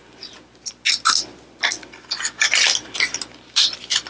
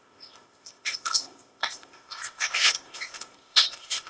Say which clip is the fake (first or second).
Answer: second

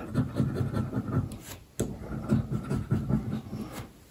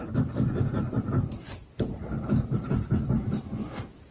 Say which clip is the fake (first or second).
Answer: second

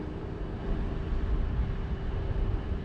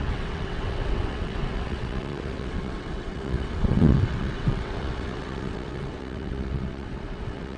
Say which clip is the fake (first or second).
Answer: second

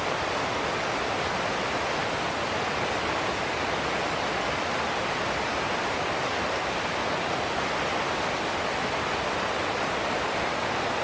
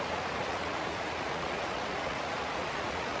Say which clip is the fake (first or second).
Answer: second